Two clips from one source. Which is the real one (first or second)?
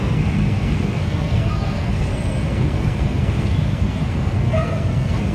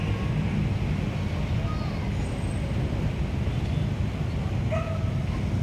second